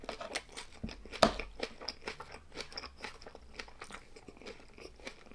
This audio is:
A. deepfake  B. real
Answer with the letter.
B